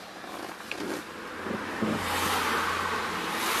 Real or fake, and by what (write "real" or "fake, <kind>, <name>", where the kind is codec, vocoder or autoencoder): real